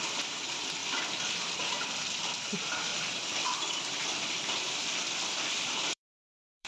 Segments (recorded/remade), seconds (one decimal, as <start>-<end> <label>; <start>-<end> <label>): 0.0-0.8 remade; 0.8-2.0 recorded; 2.0-2.9 remade; 2.9-3.6 recorded; 3.6-6.7 remade